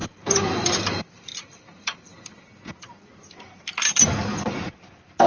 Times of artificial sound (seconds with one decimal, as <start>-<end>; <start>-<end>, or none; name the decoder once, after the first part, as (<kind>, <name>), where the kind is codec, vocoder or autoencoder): 0.0-0.8 (vocoder, BigVGAN v2)